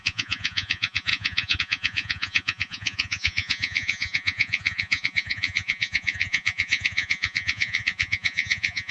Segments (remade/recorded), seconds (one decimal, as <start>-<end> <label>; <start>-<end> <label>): 0.0-8.9 remade